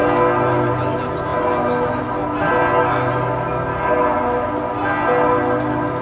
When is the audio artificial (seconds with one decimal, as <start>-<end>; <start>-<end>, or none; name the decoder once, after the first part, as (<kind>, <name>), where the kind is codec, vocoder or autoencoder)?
none